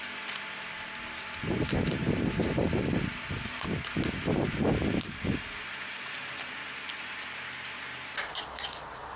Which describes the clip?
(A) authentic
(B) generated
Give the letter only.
A